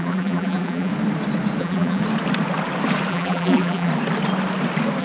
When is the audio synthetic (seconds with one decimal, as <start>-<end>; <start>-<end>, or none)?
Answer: 0.0-0.9; 1.6-2.0; 3.1-3.9